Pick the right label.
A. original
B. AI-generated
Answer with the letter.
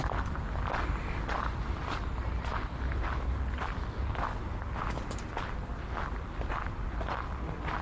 A